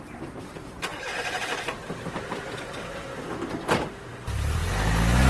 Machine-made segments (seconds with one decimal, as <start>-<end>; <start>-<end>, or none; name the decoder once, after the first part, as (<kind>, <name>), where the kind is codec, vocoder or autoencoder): 0.0-0.9 (vocoder, BigVGAN v2); 4.1-4.6